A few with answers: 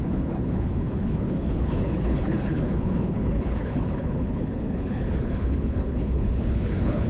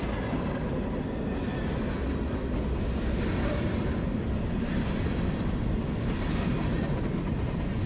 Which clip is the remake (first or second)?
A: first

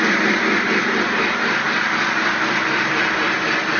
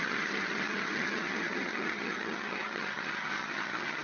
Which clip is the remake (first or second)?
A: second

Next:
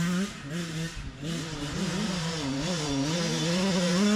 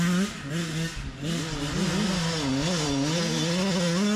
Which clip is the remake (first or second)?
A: first